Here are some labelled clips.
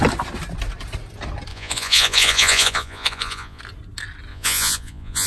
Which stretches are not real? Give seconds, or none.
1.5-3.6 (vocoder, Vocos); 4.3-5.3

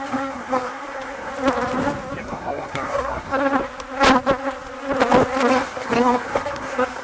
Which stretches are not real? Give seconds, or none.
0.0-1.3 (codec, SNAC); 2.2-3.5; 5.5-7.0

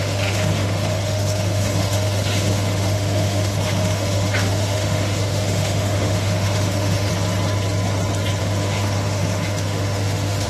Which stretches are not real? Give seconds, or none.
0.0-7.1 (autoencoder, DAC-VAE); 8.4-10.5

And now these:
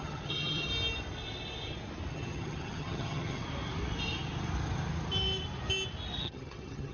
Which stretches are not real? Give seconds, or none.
0.0-0.7 (vocoder, HiFi-GAN); 2.1-3.4; 6.2-6.9

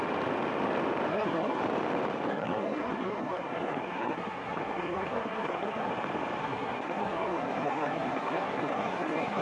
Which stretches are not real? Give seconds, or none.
1.1-1.6 (codec, SNAC); 2.3-5.9; 6.4-9.4

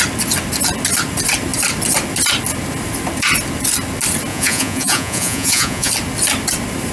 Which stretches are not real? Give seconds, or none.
4.3-5.9 (vocoder, Vocos)

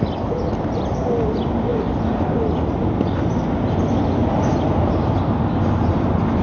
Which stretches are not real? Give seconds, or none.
none